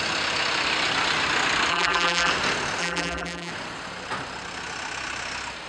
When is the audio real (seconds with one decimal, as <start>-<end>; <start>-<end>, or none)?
0.0-1.7; 2.3-2.8; 3.5-5.7